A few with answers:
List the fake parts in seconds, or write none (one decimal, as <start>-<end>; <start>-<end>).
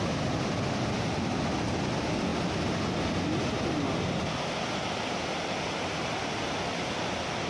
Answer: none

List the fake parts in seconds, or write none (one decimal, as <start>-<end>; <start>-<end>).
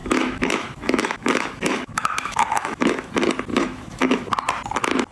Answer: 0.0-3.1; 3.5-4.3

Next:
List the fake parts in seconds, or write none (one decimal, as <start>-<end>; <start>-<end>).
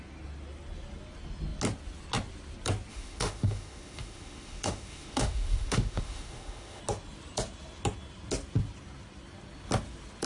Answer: 2.9-6.8